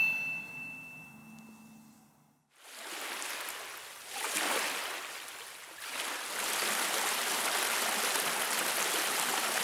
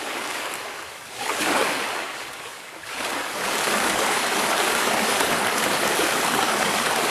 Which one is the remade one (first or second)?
second